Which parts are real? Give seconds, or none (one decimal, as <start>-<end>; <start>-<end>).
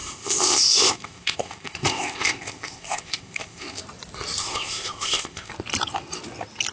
3.8-4.4; 5.5-6.7